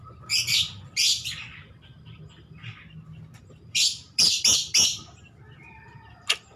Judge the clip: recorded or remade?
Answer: remade